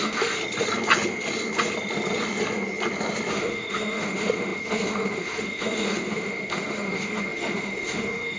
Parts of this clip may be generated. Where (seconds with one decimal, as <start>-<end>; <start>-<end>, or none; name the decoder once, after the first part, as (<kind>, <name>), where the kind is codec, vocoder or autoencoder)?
0.0-0.4 (autoencoder, DAC-VAE); 3.3-8.4